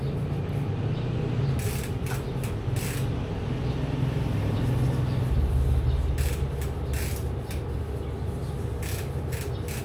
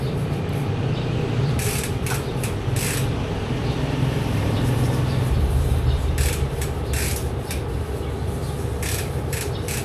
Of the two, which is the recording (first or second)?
first